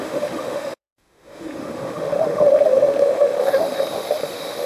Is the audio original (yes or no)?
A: no